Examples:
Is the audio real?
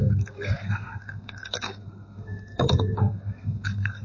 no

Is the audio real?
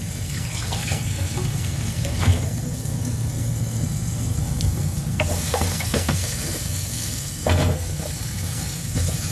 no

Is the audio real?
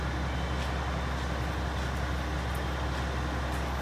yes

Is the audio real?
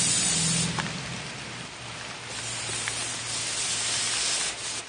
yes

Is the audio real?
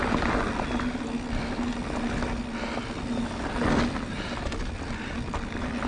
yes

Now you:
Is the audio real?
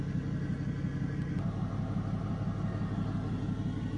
yes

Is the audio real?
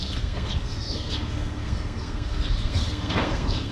no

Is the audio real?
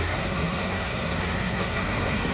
no